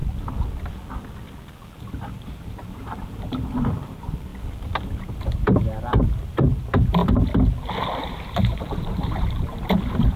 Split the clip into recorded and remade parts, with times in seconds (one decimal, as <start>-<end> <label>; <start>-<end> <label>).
0.0-1.7 recorded; 1.7-4.3 remade; 4.3-4.8 recorded; 4.8-7.0 remade; 7.0-8.0 recorded; 8.0-10.2 remade